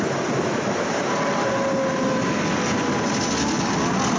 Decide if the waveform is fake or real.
real